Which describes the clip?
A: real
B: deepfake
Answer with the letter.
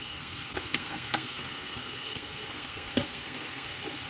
B